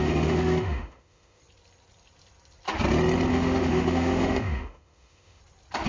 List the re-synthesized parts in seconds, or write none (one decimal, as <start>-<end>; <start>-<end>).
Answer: 0.0-1.4; 3.3-5.4

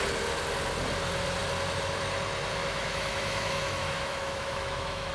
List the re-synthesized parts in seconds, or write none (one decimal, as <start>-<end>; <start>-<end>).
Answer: 2.6-5.1

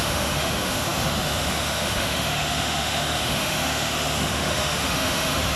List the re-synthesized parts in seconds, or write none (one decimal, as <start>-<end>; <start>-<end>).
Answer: 0.0-5.6

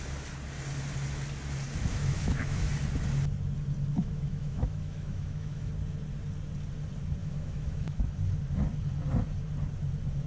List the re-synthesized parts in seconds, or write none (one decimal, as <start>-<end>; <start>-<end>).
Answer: 2.0-2.7; 3.9-5.7; 7.2-8.0

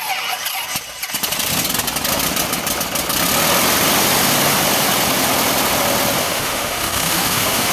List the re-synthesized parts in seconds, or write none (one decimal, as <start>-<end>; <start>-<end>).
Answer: 6.2-7.7

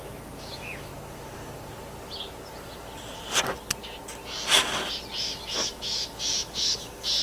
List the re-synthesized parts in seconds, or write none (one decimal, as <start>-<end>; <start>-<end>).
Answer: 0.0-0.9; 5.2-7.2